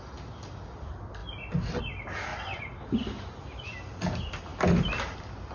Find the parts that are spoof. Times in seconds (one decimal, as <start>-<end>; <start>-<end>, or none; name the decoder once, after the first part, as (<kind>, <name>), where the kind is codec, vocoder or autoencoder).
1.2-1.8 (vocoder, BigVGAN v2); 2.3-3.4